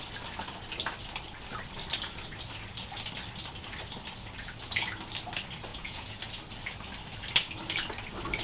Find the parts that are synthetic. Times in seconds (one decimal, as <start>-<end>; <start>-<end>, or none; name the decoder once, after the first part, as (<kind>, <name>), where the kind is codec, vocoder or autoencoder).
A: 5.7-6.2 (vocoder, Vocos)

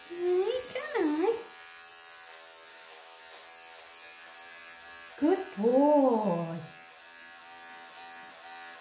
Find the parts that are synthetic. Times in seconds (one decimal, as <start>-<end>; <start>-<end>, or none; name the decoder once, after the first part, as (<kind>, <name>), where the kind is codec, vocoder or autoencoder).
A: 2.7-3.2 (autoencoder, DAC-VAE)

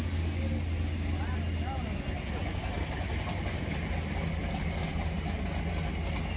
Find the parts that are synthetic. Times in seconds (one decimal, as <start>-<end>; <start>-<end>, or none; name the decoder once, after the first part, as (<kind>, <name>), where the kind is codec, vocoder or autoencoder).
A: none

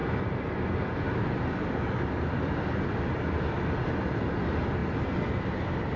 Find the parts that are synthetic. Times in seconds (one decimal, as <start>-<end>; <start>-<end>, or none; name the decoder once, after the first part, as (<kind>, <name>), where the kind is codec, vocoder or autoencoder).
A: none

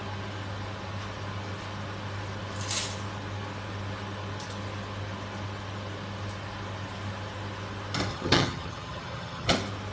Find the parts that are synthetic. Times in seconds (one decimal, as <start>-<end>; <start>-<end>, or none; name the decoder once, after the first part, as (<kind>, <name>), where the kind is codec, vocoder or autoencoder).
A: 8.1-9.5 (vocoder, HiFi-GAN)